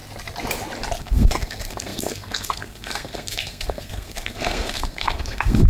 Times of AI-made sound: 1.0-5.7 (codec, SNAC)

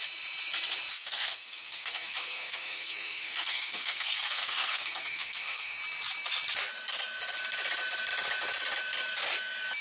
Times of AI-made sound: 0.9-5.8 (codec, SNAC)

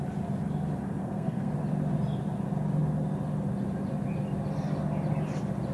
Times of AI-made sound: 1.0-1.5 (codec, SNAC)

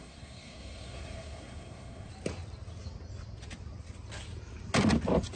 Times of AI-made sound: 0.0-2.1 (codec, SNAC)

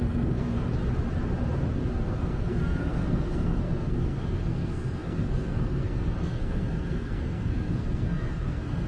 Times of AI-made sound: 0.0-0.7 (codec, SNAC); 1.9-8.9

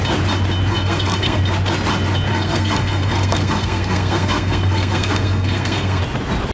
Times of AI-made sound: 0.7-1.4 (codec, SNAC); 2.3-6.0

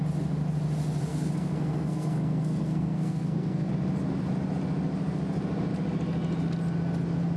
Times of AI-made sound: 1.1-3.7 (codec, SNAC)